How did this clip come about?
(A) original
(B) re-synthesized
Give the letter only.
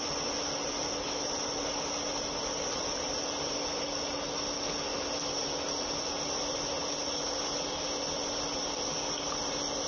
A